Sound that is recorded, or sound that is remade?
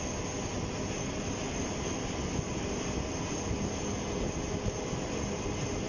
recorded